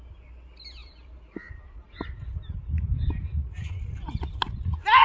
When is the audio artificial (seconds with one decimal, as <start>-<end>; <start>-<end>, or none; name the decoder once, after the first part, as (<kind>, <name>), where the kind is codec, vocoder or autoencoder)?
none